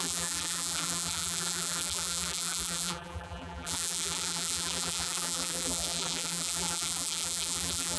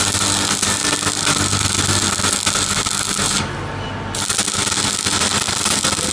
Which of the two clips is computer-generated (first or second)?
first